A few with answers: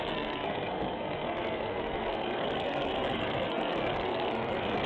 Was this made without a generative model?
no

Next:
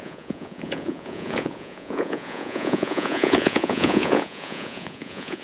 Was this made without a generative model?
no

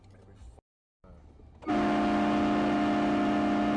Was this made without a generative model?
yes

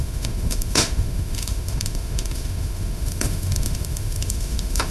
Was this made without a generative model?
no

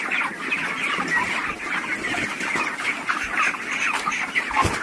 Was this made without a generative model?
yes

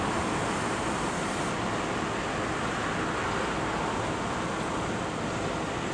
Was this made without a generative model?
yes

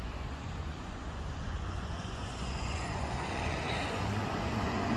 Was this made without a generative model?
no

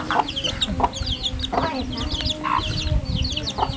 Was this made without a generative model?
yes